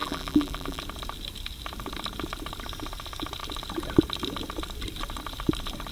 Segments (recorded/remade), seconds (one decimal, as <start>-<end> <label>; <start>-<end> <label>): 0.0-0.8 remade; 0.8-5.9 recorded